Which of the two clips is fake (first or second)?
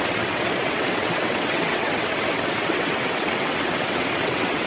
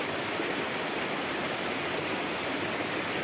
first